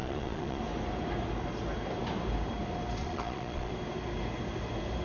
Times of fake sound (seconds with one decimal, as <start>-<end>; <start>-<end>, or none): 0.0-0.6; 3.0-3.7